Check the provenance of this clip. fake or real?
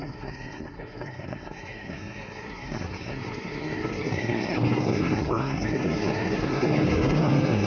fake